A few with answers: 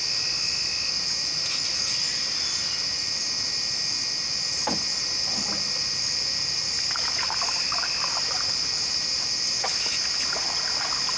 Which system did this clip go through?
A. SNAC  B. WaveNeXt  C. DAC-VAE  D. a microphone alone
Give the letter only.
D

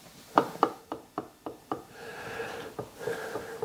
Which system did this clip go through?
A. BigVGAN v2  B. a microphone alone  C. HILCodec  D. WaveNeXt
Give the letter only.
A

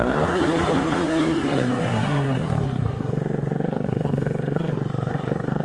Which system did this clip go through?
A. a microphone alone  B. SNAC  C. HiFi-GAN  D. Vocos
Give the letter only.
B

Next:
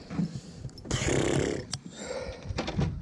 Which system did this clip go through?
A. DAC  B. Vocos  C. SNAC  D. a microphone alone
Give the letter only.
D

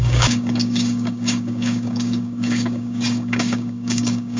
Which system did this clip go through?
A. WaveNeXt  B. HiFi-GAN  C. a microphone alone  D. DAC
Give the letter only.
D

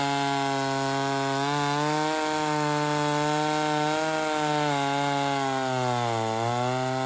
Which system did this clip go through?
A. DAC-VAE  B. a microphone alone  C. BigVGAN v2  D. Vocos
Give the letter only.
B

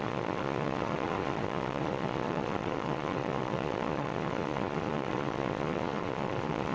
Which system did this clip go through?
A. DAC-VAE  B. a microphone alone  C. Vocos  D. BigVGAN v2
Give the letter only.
C